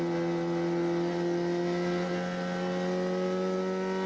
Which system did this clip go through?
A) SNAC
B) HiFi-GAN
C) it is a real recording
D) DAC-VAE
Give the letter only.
C